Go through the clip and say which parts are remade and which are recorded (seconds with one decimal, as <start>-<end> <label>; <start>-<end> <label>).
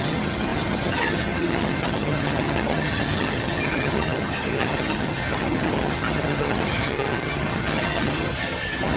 0.0-9.0 remade